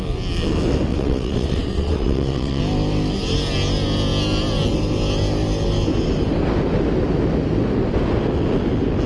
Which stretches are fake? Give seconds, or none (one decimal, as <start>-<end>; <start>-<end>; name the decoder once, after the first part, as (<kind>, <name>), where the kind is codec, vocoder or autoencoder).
0.9-2.6 (vocoder, WaveNeXt)